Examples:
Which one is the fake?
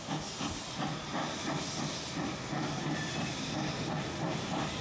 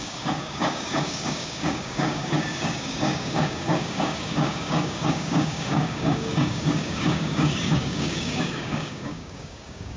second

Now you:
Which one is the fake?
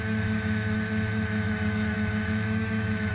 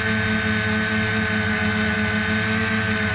first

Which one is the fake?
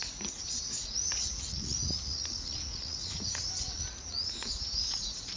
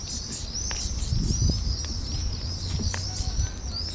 first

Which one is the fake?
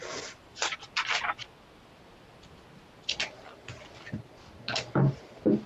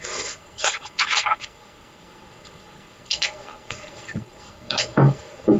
second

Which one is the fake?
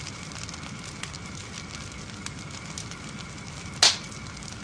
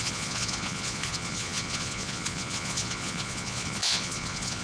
second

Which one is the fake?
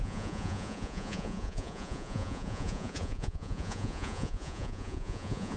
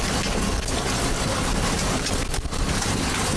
first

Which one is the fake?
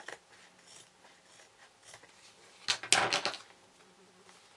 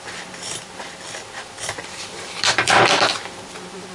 second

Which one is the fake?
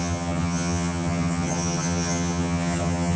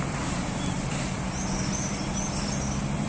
first